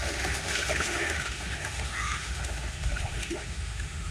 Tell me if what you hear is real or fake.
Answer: fake